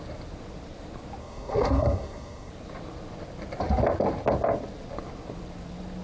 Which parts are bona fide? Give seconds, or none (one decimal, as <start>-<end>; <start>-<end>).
0.0-1.2; 2.5-6.0